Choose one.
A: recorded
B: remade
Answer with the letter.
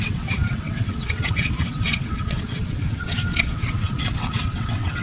B